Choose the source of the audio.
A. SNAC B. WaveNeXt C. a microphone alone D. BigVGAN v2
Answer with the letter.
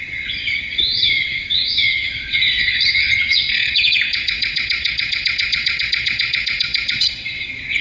B